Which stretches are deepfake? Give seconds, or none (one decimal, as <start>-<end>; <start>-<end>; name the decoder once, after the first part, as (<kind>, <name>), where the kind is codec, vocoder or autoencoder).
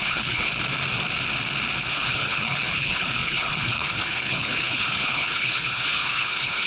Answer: 0.0-0.5 (codec, HILCodec); 1.9-6.7